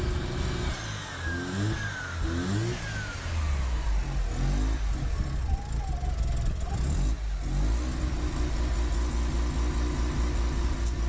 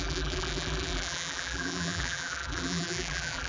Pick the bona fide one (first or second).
first